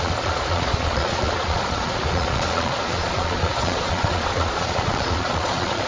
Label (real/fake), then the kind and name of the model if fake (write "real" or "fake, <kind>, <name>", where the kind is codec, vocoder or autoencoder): fake, vocoder, Vocos